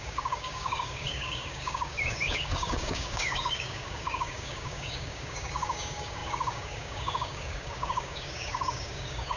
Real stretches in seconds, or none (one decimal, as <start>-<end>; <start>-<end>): none